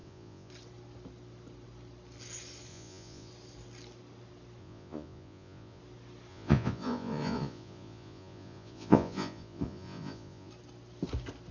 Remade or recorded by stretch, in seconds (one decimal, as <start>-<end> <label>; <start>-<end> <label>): 0.0-0.5 remade; 0.5-2.7 recorded; 2.7-3.3 remade; 3.3-4.6 recorded; 4.6-5.8 remade; 5.8-6.3 recorded; 6.3-10.5 remade; 10.5-11.5 recorded